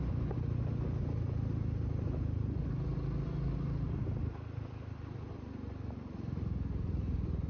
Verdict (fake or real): real